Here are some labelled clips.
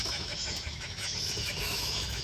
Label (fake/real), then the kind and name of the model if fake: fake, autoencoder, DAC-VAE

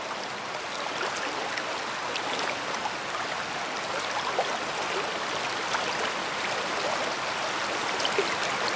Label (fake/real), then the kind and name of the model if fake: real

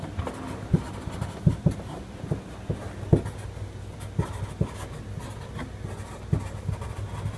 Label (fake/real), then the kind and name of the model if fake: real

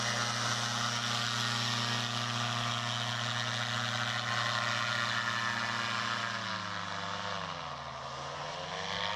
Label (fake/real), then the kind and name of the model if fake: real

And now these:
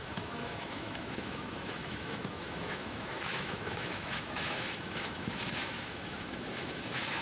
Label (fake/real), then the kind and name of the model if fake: fake, autoencoder, DAC-VAE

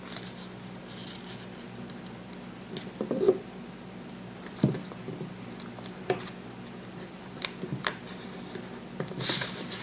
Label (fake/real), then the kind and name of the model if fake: real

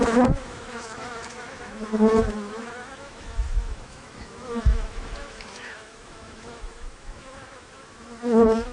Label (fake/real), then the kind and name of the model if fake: fake, autoencoder, DAC-VAE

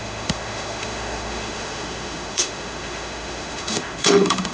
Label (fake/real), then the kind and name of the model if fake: fake, autoencoder, DAC-VAE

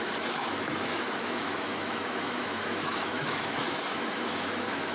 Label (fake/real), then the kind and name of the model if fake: fake, autoencoder, DAC-VAE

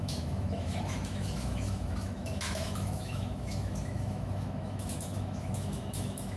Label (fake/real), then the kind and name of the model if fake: fake, autoencoder, DAC-VAE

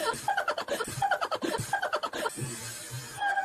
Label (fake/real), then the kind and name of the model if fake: real